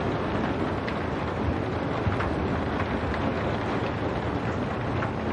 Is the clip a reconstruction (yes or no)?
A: no